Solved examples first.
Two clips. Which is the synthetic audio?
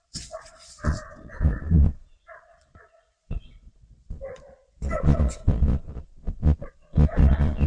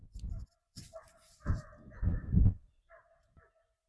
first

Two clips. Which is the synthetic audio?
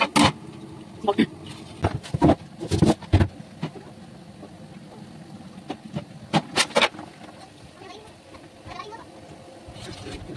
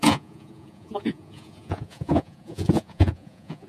second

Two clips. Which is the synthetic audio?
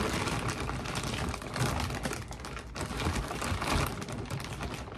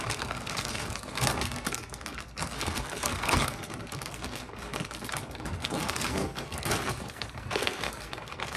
second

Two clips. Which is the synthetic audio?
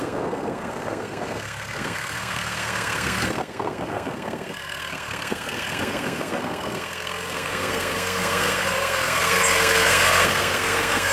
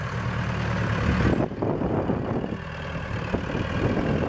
first